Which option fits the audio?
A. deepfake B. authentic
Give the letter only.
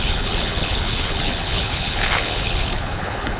A